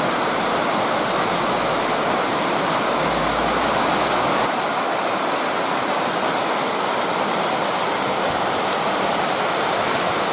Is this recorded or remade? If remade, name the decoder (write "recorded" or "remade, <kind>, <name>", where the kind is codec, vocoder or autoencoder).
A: recorded